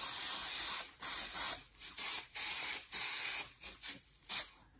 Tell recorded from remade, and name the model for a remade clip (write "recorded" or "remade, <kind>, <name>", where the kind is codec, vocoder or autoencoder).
remade, vocoder, BigVGAN v2